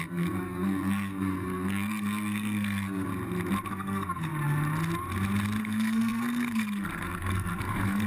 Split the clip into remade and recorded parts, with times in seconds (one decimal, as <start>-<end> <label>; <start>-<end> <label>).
0.0-3.1 remade; 3.1-3.7 recorded; 3.7-4.3 remade; 4.3-5.6 recorded; 5.6-8.1 remade